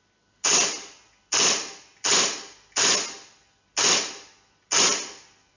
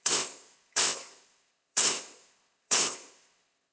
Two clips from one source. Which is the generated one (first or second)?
second